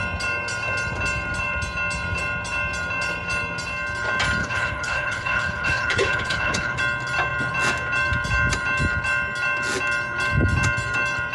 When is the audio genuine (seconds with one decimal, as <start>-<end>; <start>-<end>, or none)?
0.0-4.4; 6.8-11.3